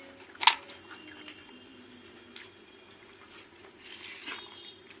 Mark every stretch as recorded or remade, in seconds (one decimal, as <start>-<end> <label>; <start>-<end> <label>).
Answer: 0.0-5.0 recorded